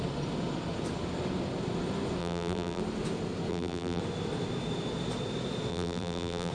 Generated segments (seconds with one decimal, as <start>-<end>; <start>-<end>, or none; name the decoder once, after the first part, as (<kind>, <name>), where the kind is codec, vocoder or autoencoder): 2.2-2.8 (vocoder, BigVGAN v2); 3.5-4.0; 5.7-6.5